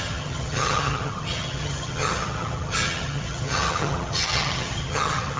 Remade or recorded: remade